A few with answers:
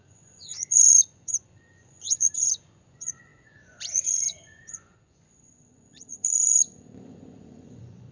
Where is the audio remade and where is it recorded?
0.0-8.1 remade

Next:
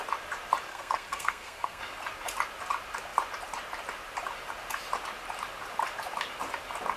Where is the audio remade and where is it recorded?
0.0-0.7 recorded; 0.7-1.8 remade; 1.8-7.0 recorded

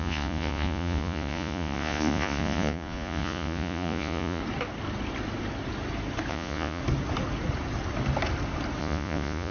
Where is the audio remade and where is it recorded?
0.0-4.4 remade; 4.4-6.3 recorded; 6.3-6.8 remade; 6.8-8.8 recorded; 8.8-9.5 remade

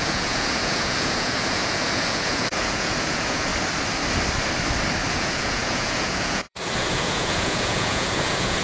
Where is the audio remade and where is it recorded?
0.0-3.5 remade; 3.5-5.1 recorded; 5.1-8.6 remade

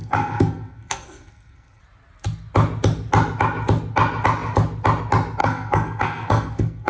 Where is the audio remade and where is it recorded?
0.0-1.8 remade; 1.8-5.4 recorded; 5.4-6.9 remade

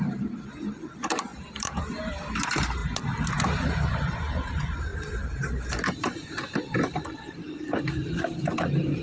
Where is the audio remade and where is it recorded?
0.0-2.8 remade; 2.8-3.3 recorded; 3.3-9.0 remade